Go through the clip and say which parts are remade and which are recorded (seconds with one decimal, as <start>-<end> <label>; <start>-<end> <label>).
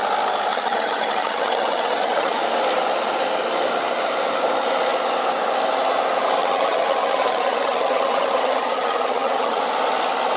0.0-0.5 recorded; 0.5-2.4 remade; 2.4-6.4 recorded; 6.4-9.6 remade; 9.6-10.4 recorded